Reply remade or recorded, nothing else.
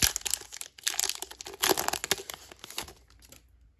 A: recorded